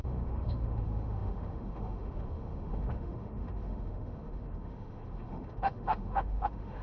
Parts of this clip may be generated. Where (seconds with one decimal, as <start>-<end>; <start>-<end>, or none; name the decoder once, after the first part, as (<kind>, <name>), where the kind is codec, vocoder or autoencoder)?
0.0-6.8 (autoencoder, DAC-VAE)

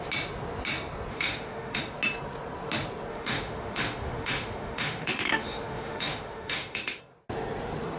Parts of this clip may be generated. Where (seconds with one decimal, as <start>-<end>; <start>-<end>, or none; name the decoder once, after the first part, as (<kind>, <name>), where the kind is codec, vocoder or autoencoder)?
1.1-1.8 (autoencoder, DAC-VAE); 3.1-7.0

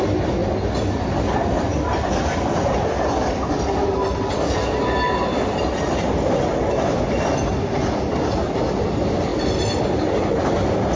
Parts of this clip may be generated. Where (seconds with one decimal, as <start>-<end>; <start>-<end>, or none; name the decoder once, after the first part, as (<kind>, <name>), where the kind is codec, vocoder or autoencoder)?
none